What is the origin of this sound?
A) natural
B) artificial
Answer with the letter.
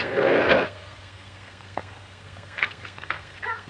B